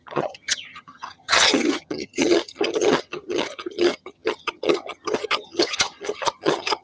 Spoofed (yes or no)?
yes